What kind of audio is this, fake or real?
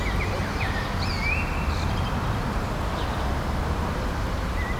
real